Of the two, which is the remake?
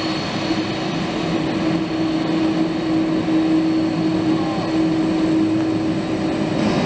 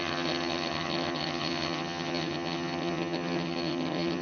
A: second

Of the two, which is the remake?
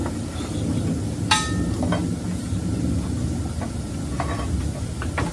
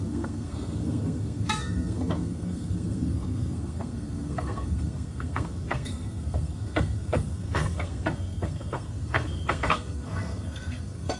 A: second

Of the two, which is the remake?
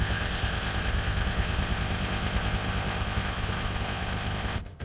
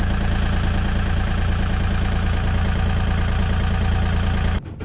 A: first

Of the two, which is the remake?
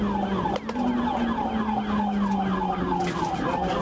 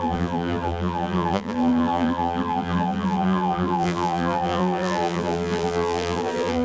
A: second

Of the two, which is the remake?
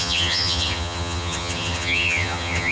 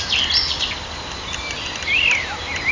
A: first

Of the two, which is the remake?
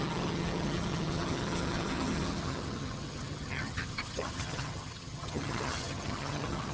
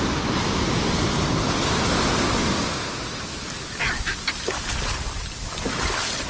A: first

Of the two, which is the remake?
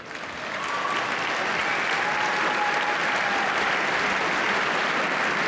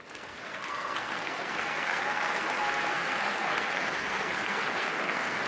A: second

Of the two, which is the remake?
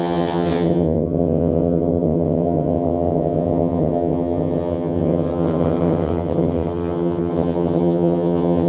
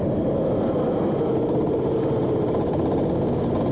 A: first